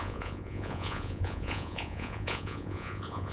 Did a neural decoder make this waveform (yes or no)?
yes